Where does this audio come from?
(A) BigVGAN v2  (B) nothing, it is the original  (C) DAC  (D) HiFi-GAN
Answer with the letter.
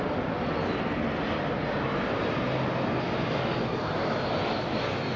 B